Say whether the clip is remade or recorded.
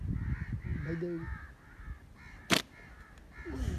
recorded